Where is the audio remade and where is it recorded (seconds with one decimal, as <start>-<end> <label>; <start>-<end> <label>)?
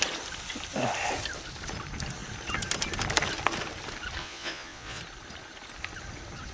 0.0-4.2 recorded; 4.2-5.0 remade; 5.0-6.5 recorded